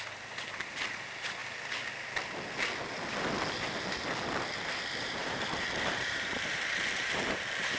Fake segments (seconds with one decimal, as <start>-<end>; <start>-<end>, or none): 5.2-7.8